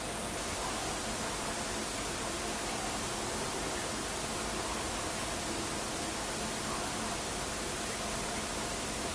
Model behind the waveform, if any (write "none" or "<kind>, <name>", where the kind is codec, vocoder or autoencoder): none